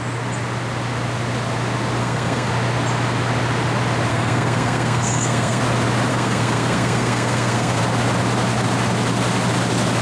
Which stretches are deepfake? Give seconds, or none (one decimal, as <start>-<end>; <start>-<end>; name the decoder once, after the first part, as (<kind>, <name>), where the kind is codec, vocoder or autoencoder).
2.0-2.5 (codec, SNAC); 4.1-5.6; 6.1-7.8